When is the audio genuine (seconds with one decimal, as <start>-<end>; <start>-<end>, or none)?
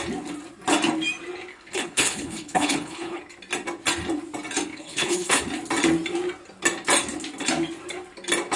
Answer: 0.0-1.5; 3.2-4.7; 5.4-8.6